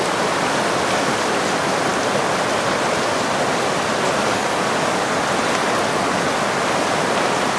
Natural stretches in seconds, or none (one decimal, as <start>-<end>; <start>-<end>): 0.0-4.2; 5.2-7.6

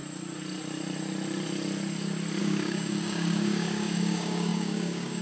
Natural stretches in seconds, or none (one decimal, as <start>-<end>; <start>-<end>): 0.0-2.4